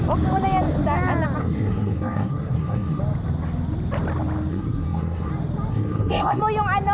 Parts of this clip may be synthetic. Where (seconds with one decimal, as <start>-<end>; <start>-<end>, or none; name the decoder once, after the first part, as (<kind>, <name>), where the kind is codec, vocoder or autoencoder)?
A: 1.4-3.0 (codec, SNAC); 4.5-5.3; 5.7-6.4